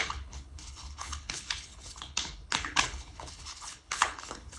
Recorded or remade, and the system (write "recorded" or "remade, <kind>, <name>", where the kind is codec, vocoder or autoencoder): remade, codec, HILCodec